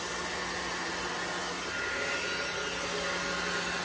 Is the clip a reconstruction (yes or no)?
no